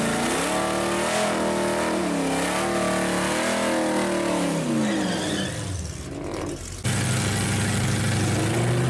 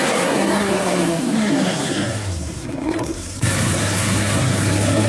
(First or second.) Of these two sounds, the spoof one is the second